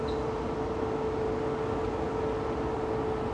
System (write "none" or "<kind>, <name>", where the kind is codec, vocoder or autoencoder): none